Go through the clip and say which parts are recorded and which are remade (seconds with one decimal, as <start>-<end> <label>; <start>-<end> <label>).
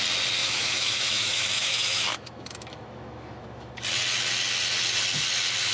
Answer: 0.0-0.4 recorded; 0.4-3.7 remade; 3.7-5.7 recorded